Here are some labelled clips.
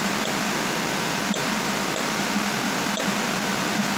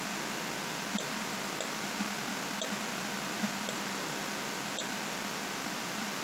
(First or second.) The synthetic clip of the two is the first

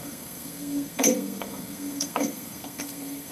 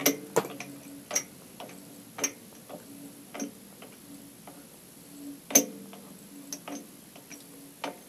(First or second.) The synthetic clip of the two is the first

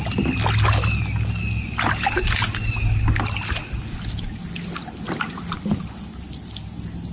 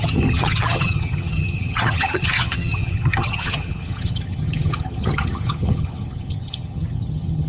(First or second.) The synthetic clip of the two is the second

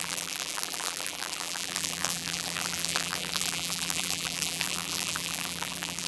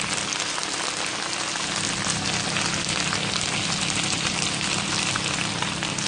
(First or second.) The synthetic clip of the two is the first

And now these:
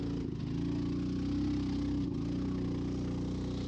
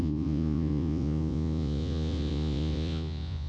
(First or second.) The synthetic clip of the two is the second